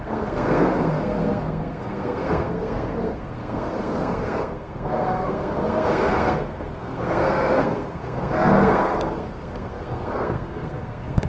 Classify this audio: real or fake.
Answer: fake